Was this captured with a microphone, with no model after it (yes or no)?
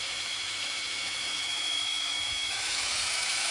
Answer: no